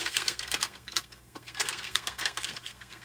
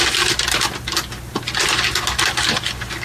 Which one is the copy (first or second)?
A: first